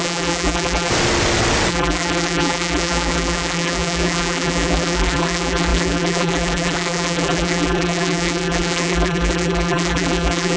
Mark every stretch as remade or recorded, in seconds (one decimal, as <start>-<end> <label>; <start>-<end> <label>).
0.0-0.9 remade; 0.9-1.7 recorded; 1.7-10.6 remade